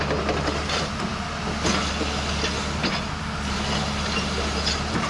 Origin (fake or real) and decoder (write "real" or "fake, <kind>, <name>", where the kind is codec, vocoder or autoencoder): real